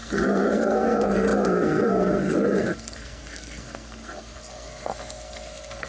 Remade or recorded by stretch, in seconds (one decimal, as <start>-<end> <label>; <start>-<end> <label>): 0.0-5.9 remade